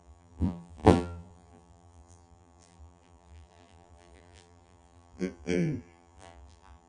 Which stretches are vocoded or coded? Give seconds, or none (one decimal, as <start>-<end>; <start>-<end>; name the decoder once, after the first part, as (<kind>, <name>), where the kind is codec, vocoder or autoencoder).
0.0-6.9 (vocoder, BigVGAN v2)